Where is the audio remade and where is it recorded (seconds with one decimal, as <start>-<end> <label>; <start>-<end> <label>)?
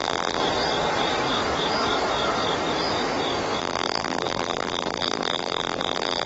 0.0-0.4 remade; 0.4-3.6 recorded; 3.6-6.3 remade